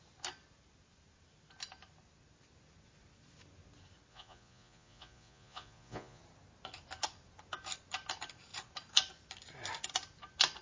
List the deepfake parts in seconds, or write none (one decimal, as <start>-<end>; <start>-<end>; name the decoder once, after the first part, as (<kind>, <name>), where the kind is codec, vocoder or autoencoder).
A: 4.1-6.2 (vocoder, Vocos)